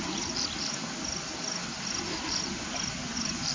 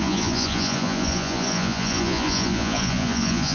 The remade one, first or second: second